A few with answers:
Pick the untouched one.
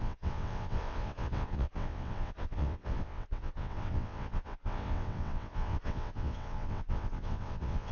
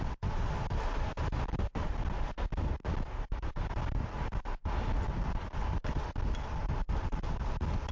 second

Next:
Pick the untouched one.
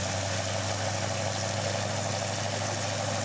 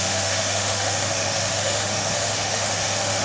first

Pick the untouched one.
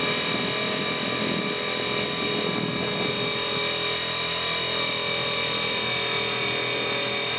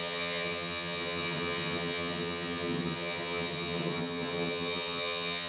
first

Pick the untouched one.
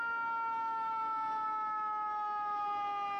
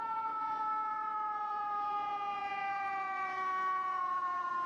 first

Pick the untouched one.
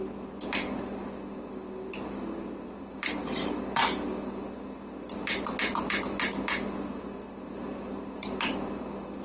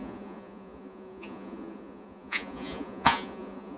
first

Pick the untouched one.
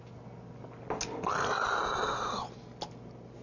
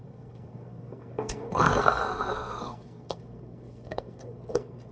first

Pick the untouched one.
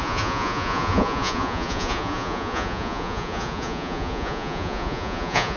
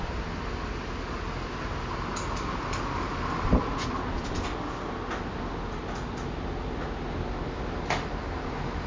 second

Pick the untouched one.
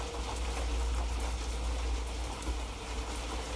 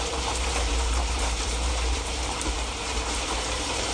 first